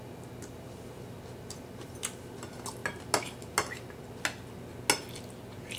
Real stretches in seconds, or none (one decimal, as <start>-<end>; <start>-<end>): 0.0-5.8